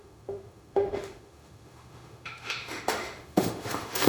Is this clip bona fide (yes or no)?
no